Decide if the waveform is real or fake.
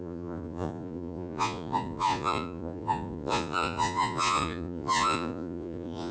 fake